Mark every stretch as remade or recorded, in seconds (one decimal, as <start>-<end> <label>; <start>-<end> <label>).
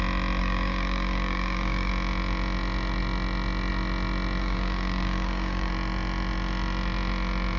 0.0-0.4 recorded; 0.4-1.9 remade; 1.9-4.4 recorded; 4.4-5.7 remade; 5.7-7.6 recorded